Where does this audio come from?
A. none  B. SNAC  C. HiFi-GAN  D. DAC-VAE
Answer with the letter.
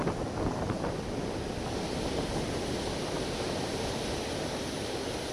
A